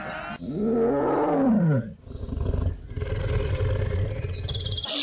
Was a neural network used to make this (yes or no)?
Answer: no